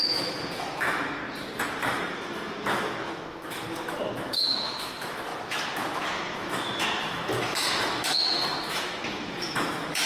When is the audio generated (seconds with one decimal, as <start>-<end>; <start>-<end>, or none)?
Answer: 0.0-1.2; 1.8-10.1